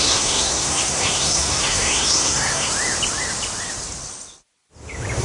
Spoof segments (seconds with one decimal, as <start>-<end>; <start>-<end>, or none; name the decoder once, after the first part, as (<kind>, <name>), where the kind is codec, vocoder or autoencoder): 0.0-2.7 (codec, SNAC)